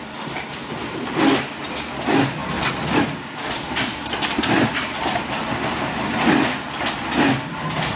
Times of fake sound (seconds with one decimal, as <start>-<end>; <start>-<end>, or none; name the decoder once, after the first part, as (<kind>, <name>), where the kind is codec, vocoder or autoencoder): none